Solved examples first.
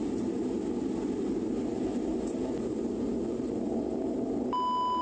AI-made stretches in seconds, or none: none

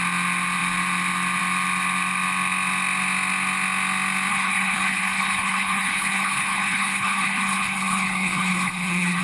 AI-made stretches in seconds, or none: 4.3-9.2 (codec, HILCodec)

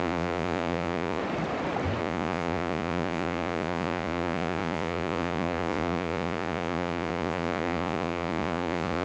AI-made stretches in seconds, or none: 0.0-1.2 (vocoder, Vocos); 2.0-9.0